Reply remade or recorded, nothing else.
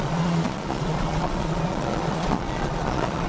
remade